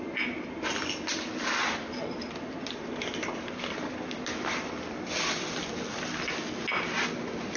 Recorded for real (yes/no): yes